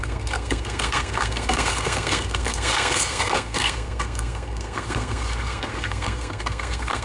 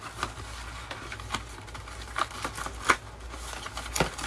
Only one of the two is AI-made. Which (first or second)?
first